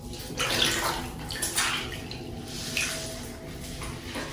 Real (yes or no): yes